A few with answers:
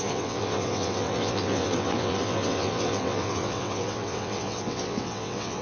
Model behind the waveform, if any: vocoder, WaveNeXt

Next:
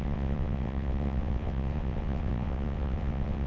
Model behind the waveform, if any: vocoder, WaveNeXt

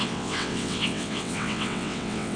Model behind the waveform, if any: vocoder, WaveNeXt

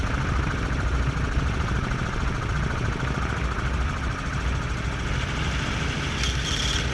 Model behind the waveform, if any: none